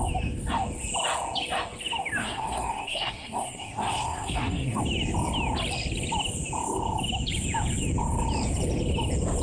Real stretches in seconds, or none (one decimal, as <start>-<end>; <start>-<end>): 0.0-2.2; 4.8-9.4